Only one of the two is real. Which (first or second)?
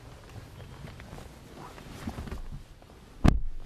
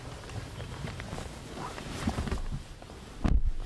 first